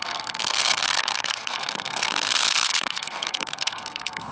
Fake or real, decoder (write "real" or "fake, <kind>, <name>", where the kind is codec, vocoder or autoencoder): fake, codec, SNAC